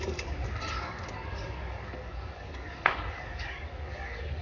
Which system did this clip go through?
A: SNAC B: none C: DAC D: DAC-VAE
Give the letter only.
C